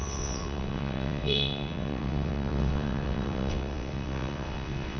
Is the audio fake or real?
fake